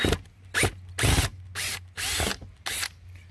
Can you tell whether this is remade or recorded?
recorded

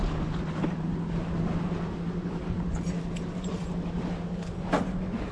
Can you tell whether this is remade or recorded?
recorded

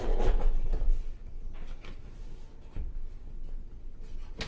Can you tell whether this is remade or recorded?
recorded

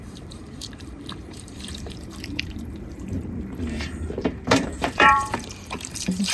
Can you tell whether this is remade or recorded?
remade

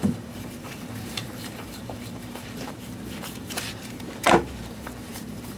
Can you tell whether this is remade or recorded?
remade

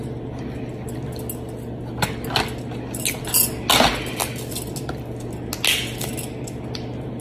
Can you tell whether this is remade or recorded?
recorded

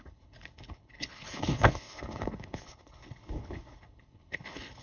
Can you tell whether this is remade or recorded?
remade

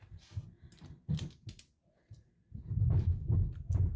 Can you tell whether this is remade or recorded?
recorded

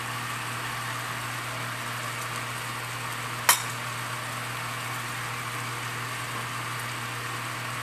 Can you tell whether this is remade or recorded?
recorded